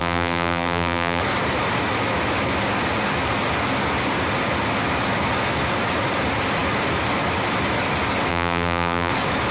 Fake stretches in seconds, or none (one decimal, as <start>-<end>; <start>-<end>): 0.0-1.2; 8.3-9.1